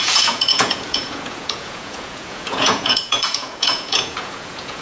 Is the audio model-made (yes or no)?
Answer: yes